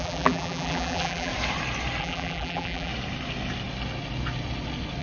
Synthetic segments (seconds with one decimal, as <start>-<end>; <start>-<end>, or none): 0.0-1.3; 2.0-2.9